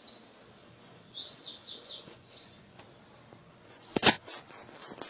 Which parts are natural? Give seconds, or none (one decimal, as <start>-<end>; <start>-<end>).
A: 0.0-0.6; 2.8-3.4; 4.3-5.1

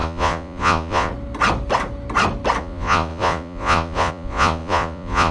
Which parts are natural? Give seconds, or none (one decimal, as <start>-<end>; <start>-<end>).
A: 1.1-2.6

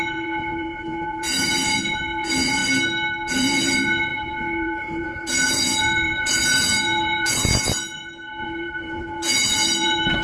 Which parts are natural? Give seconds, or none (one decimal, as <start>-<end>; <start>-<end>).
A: 2.6-3.3

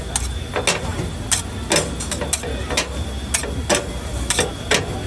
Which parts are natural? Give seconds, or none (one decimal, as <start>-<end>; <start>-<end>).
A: 0.0-5.1

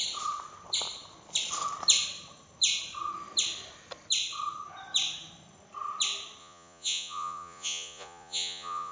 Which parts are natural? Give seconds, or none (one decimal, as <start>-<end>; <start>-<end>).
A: 0.0-6.4